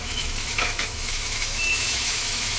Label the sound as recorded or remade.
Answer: remade